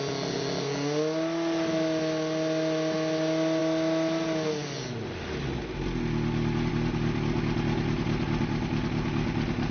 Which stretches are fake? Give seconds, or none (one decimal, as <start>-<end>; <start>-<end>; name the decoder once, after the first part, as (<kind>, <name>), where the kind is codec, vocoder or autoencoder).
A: none

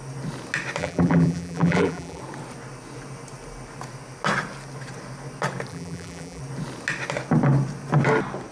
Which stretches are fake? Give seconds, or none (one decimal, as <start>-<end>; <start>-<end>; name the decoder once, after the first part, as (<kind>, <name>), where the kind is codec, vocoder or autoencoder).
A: 0.8-2.2 (vocoder, BigVGAN v2); 5.7-6.4

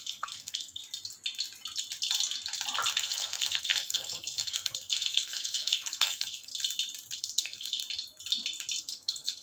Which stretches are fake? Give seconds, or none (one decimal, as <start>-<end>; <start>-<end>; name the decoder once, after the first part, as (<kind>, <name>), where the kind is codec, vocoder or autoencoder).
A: 0.0-0.8 (codec, SNAC); 2.9-6.5; 7.2-7.8; 8.8-9.4

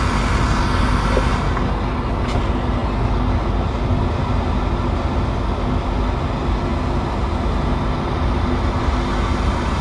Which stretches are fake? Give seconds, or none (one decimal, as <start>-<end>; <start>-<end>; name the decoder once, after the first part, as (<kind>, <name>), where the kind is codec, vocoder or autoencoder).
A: none